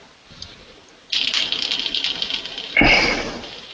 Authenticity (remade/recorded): recorded